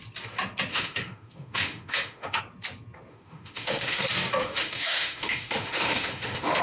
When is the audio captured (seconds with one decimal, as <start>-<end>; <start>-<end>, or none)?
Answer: 0.0-0.7; 2.4-3.1; 4.0-4.4

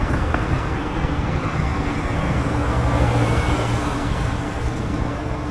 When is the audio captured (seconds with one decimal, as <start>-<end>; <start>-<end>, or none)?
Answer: none

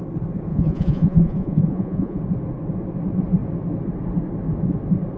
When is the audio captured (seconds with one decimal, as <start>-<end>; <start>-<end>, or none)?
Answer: 0.0-0.5; 2.2-5.2

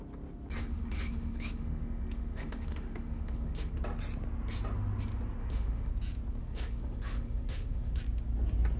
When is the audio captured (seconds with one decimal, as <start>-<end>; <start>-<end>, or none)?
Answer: 0.0-0.6; 3.7-5.4; 5.9-6.4; 8.0-8.8